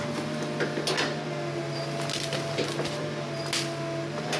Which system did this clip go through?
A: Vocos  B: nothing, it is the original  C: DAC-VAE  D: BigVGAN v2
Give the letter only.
B